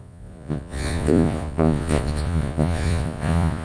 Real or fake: fake